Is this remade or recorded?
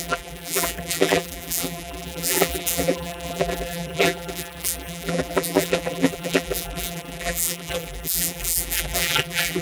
remade